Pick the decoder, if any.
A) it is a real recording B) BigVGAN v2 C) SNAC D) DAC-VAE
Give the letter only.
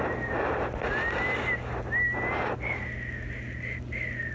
A